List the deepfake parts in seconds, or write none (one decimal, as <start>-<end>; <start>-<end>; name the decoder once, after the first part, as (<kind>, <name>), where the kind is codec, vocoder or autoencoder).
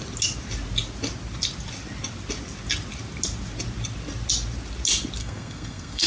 5.2-6.1 (codec, SNAC)